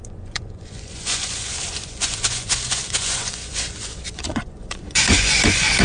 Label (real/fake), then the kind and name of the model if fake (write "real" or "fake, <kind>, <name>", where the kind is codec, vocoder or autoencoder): fake, vocoder, Vocos